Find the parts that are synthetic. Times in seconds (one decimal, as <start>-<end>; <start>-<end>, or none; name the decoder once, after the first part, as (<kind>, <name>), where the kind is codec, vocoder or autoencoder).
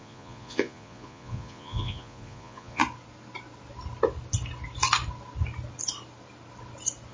0.0-2.8 (vocoder, Vocos)